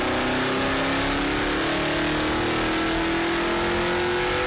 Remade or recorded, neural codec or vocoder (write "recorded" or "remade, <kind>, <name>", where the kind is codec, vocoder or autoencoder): recorded